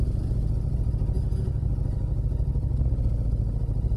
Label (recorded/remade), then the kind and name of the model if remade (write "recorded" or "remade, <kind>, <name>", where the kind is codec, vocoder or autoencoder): recorded